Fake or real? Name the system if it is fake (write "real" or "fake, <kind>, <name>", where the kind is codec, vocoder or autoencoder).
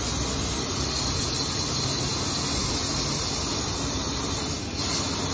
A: real